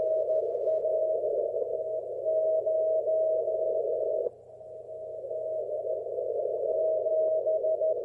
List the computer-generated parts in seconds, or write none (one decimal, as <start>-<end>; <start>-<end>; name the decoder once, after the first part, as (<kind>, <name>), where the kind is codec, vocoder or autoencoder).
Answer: none